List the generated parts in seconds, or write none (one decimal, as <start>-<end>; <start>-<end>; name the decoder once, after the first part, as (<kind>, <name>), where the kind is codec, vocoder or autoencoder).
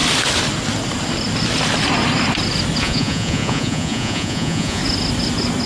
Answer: 2.8-4.8 (vocoder, Vocos)